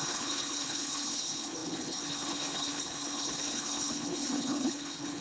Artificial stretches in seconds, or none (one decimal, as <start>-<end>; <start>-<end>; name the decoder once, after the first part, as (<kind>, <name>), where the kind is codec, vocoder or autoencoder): 0.0-5.2 (codec, HILCodec)